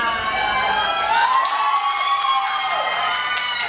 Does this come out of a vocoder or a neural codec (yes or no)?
no